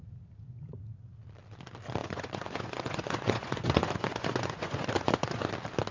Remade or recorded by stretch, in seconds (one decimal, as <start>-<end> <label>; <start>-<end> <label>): 0.0-2.0 recorded; 2.0-5.5 remade; 5.5-5.9 recorded

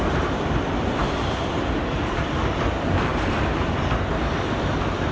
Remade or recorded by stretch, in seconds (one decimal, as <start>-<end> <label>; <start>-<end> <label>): 0.0-1.2 recorded; 1.2-2.2 remade; 2.2-5.1 recorded

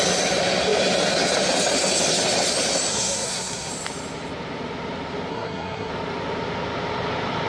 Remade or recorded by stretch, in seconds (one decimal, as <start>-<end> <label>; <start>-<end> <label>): 0.0-2.9 recorded; 2.9-3.7 remade; 3.7-5.3 recorded; 5.3-5.9 remade; 5.9-7.5 recorded

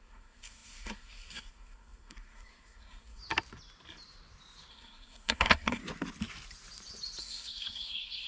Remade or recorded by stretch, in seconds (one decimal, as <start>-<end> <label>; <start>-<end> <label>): 0.0-3.2 remade; 3.2-4.7 recorded; 4.7-5.8 remade; 5.8-7.2 recorded; 7.2-8.3 remade